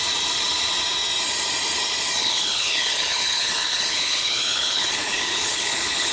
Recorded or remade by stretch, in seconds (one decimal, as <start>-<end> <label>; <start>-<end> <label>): 0.0-2.2 recorded; 2.2-6.1 remade

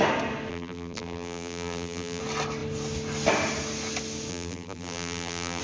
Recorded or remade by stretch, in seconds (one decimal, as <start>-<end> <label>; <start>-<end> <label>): 0.0-0.5 recorded; 0.5-2.2 remade; 2.2-4.3 recorded; 4.3-5.6 remade

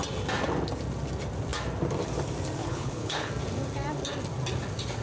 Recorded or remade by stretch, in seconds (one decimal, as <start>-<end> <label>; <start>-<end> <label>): 0.0-2.6 recorded; 2.6-3.3 remade; 3.3-5.0 recorded

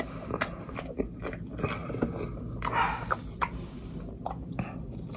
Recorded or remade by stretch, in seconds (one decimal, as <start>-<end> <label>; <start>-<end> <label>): 0.0-5.2 recorded